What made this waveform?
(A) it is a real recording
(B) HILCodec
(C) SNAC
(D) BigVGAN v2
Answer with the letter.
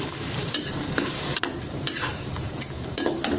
D